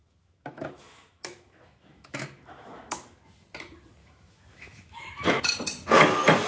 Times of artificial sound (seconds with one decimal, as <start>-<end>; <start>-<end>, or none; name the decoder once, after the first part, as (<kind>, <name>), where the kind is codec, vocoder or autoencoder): 0.0-3.3 (autoencoder, DAC-VAE); 4.0-5.5